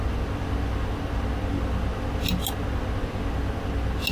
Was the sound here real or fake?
real